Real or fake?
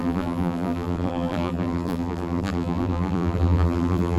fake